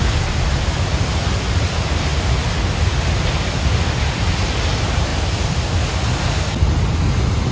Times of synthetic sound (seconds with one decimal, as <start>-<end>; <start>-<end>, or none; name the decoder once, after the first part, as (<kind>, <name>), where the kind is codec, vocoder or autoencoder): none